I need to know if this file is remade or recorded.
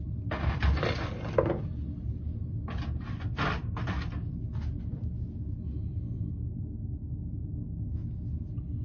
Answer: recorded